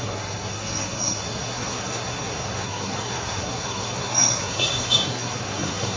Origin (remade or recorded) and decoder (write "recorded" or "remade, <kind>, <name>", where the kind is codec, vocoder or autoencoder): remade, codec, SNAC